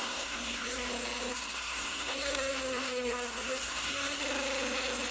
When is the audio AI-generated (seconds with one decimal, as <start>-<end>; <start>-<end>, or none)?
0.0-0.9; 1.3-4.2